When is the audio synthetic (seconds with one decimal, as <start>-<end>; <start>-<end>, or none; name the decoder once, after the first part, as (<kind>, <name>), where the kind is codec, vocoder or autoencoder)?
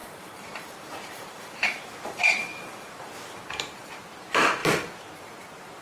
0.0-3.2 (vocoder, BigVGAN v2)